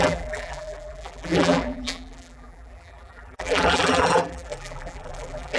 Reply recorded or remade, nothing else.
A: remade